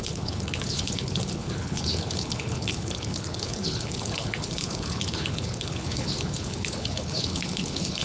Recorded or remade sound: remade